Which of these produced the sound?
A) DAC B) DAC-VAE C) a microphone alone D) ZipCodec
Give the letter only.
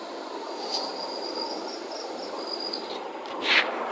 C